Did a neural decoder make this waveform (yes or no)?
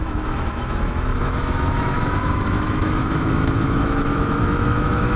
yes